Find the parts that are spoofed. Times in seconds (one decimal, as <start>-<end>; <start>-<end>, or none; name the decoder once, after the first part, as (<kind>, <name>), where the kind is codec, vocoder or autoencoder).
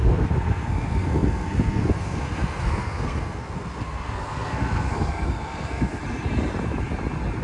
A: 0.0-6.0 (codec, SNAC)